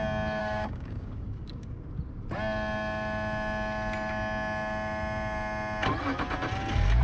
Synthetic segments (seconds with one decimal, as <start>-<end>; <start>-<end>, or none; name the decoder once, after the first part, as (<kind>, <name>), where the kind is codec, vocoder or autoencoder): 0.4-1.8 (codec, DAC)